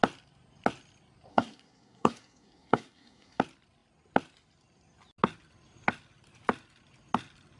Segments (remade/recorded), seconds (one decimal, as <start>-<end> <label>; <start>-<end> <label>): 0.0-1.3 recorded; 1.3-3.4 remade; 3.4-7.6 recorded